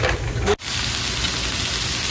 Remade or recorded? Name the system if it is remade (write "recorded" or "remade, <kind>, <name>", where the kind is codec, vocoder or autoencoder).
recorded